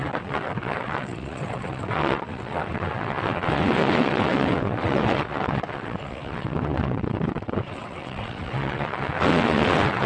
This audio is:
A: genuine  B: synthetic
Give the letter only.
B